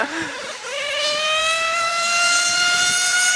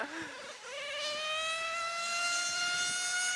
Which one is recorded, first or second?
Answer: second